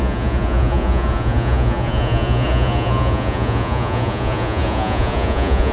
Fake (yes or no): yes